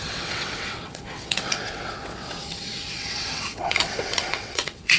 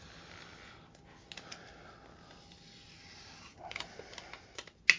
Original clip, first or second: second